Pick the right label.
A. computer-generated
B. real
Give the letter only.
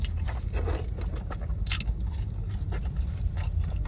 B